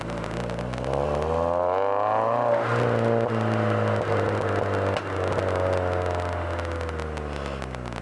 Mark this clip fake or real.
real